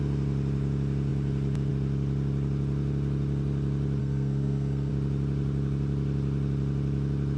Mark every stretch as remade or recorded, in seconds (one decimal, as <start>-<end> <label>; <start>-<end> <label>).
0.0-4.0 recorded; 4.0-4.9 remade; 4.9-7.4 recorded